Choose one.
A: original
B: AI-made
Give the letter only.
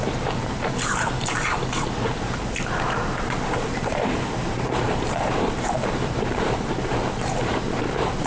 B